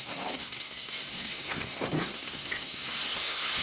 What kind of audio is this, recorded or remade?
remade